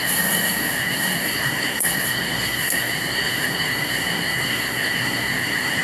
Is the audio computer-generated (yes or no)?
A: yes